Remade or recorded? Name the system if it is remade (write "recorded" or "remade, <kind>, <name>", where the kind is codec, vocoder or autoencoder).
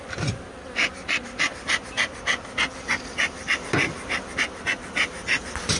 recorded